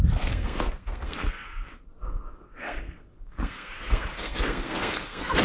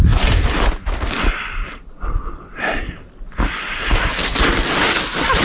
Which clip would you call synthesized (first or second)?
first